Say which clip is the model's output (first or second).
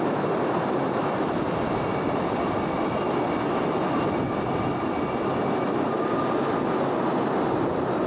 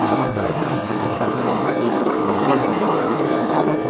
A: second